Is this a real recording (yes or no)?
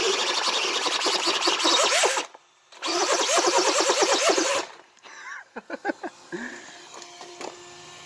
yes